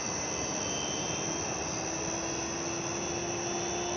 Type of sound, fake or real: real